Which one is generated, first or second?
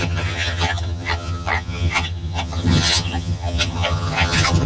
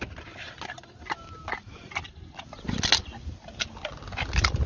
first